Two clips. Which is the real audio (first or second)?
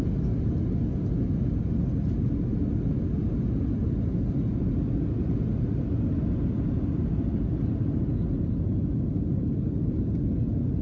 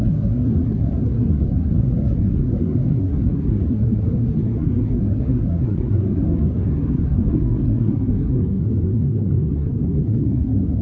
first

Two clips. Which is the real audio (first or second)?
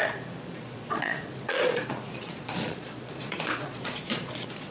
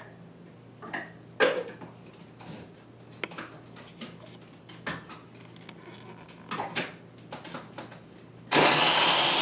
second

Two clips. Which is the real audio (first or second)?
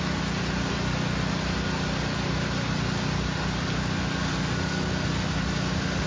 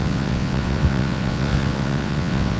first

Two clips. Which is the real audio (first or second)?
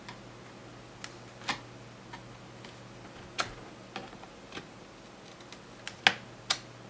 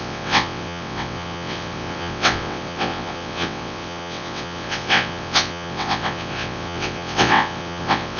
first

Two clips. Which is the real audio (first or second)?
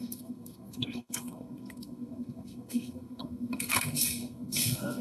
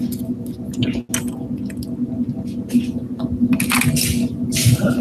second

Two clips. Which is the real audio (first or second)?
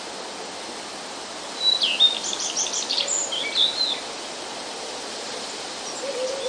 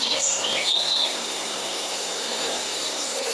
first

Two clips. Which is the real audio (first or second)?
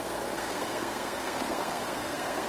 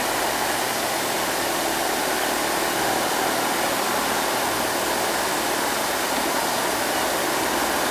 second